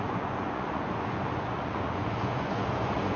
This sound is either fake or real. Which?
fake